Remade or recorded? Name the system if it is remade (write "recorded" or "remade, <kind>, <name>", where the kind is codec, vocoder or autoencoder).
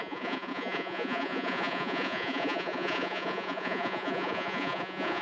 remade, vocoder, Vocos